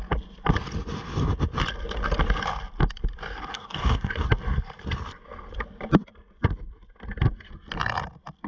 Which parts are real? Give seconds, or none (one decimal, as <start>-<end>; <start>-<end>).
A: 0.0-3.5; 4.1-8.5